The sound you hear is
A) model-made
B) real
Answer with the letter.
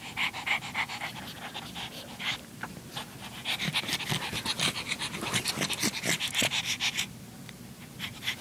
B